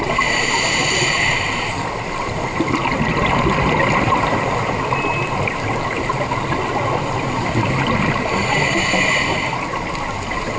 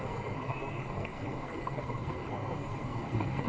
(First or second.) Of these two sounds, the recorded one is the first